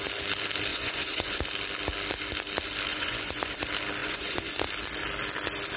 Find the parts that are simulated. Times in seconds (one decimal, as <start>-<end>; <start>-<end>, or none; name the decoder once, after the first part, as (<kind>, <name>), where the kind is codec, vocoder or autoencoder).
0.7-1.4 (vocoder, Vocos); 2.9-3.6; 4.0-4.5